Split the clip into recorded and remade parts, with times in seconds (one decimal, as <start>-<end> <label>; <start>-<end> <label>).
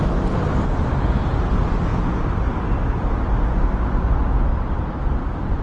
0.0-5.6 recorded